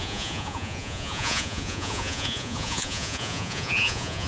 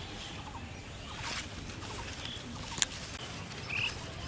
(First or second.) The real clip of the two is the second